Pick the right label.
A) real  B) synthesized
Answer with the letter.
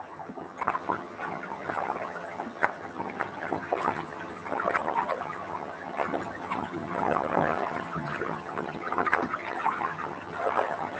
B